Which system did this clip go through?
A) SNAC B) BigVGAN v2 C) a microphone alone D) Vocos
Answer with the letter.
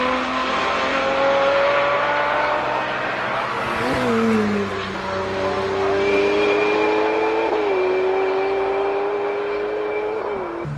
C